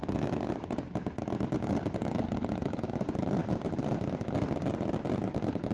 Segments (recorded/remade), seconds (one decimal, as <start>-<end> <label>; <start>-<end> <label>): 0.0-3.4 remade; 3.4-5.3 recorded; 5.3-5.7 remade